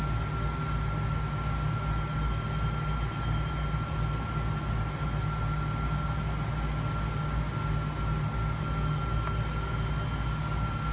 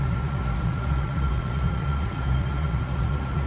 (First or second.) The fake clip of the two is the second